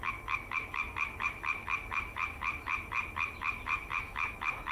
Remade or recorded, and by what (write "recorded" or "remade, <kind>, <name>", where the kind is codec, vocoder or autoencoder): remade, autoencoder, DAC-VAE